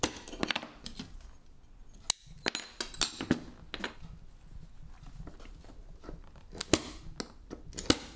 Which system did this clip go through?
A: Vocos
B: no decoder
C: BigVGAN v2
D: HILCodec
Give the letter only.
B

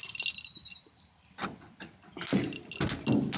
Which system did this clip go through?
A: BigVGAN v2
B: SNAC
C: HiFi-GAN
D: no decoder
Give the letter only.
D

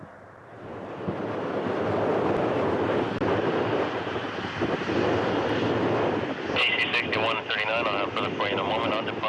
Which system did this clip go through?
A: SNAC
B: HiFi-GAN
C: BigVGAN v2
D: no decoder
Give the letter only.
D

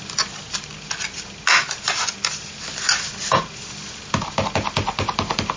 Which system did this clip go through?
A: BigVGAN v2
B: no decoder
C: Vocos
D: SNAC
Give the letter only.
B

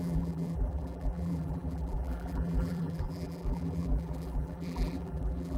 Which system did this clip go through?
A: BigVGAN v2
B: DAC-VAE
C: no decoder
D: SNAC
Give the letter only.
A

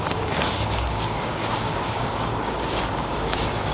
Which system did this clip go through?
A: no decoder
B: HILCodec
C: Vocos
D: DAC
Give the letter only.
D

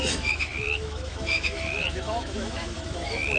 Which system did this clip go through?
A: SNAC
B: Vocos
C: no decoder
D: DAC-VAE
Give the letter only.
D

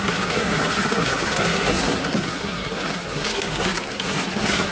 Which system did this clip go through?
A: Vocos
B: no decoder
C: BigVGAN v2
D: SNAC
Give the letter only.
D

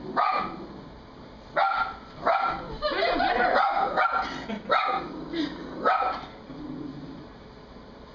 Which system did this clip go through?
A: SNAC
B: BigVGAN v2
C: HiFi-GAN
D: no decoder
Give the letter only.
D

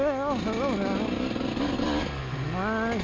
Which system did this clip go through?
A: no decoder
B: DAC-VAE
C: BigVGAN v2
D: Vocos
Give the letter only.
A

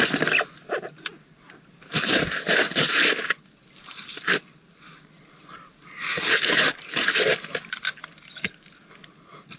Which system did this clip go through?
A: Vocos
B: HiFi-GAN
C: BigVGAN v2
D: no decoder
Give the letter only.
D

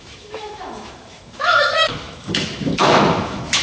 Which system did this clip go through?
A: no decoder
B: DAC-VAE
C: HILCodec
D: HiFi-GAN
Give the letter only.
B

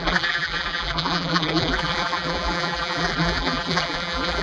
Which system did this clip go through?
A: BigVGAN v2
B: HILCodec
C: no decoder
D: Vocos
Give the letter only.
A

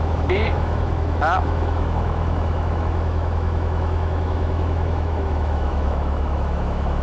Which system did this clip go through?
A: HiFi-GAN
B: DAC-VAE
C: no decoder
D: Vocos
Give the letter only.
B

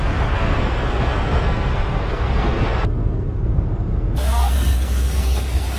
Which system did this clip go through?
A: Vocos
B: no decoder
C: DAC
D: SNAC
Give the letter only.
D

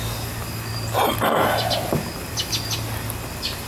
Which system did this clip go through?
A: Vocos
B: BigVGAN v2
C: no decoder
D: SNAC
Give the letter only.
C